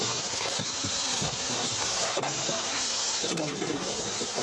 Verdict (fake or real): fake